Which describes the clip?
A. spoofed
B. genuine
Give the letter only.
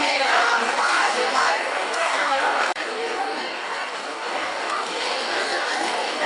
A